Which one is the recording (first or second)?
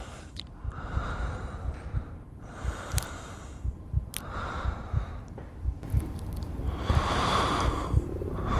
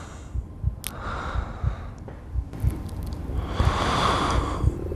second